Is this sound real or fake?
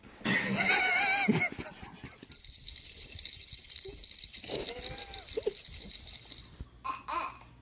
real